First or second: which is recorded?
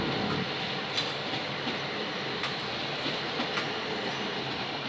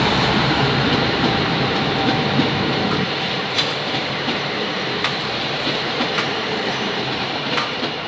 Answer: first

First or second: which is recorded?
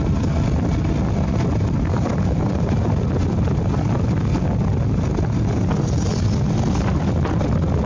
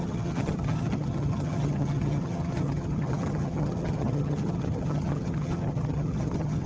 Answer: first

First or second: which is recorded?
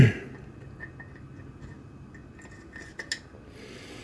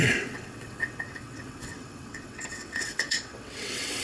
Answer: first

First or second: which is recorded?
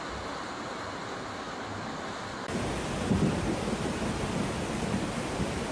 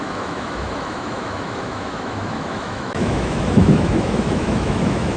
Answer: first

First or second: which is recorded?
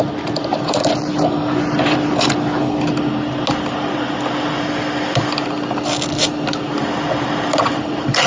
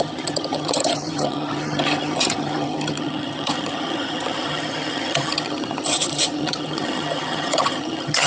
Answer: first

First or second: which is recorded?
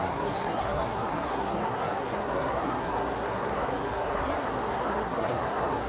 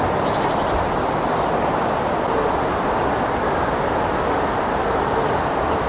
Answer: second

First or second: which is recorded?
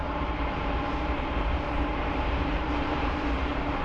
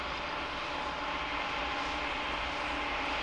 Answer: second